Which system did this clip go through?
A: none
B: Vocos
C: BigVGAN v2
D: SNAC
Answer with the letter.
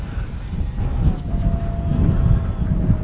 A